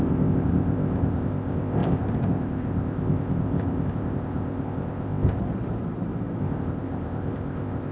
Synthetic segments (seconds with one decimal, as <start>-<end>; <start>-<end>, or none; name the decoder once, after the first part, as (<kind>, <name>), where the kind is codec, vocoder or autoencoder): 0.0-5.4 (codec, ZipCodec); 6.4-7.9